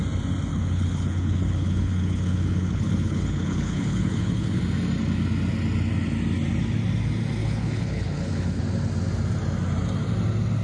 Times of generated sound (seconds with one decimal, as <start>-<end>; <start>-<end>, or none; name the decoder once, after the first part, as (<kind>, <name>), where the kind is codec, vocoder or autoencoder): 0.5-4.6 (codec, HILCodec); 7.4-8.6